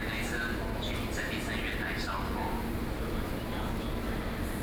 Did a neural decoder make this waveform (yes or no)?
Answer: no